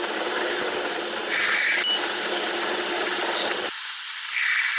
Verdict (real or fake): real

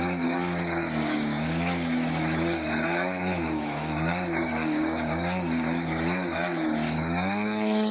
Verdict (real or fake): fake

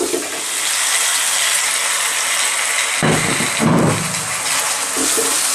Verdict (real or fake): real